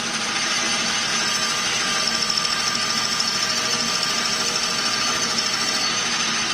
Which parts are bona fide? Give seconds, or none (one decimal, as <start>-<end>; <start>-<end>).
0.0-6.5